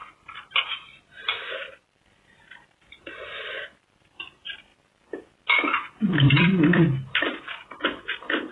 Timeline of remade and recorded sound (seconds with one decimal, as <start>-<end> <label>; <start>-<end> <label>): 0.0-4.7 remade; 4.7-6.2 recorded; 6.2-8.5 remade